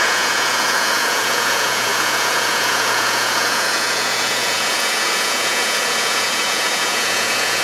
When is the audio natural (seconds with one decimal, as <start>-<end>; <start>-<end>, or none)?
none